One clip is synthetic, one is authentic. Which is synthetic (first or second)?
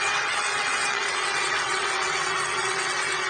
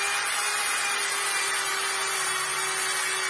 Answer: first